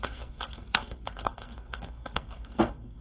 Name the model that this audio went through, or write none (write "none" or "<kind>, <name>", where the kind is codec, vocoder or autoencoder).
codec, SNAC